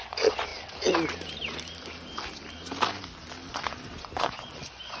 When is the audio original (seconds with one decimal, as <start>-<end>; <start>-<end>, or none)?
0.5-3.5